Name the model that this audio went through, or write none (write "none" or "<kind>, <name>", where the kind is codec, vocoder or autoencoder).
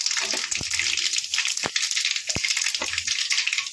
none